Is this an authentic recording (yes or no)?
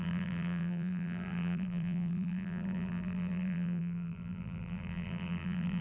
no